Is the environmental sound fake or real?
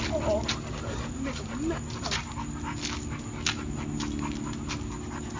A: real